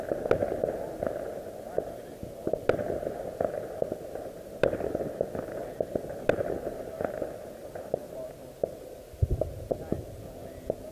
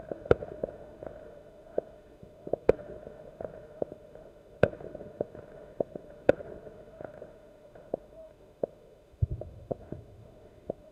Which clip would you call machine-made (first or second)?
second